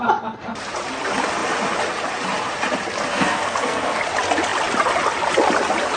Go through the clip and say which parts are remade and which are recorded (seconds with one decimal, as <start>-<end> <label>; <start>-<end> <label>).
0.0-3.1 recorded; 3.1-4.0 remade; 4.0-6.0 recorded